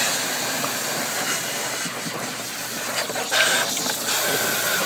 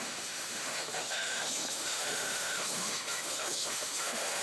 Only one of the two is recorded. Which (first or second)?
first